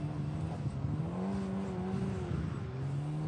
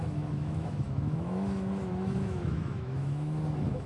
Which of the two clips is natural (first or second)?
first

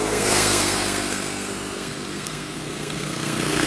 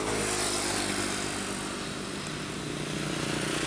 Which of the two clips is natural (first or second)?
second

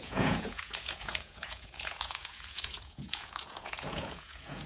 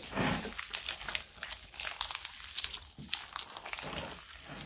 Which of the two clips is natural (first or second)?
second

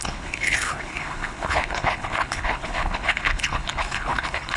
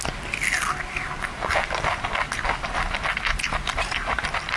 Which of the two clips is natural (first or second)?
second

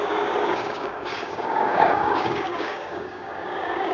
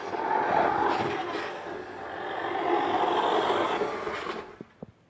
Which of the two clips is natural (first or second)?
second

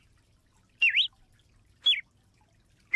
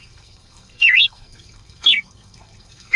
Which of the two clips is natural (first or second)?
first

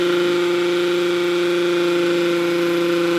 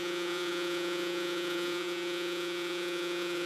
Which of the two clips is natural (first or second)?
first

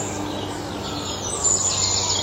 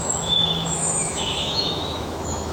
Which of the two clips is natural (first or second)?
first